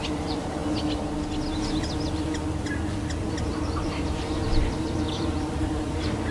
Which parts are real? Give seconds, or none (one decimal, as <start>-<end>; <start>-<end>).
0.6-3.2